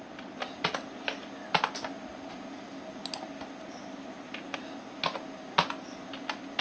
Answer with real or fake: real